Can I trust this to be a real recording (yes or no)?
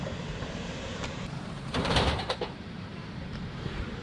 no